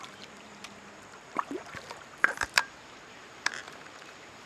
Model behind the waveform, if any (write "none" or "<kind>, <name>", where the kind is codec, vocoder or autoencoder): vocoder, BigVGAN v2